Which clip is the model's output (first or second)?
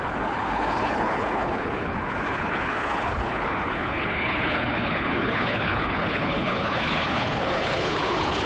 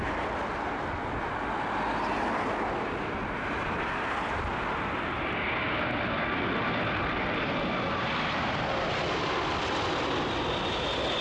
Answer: first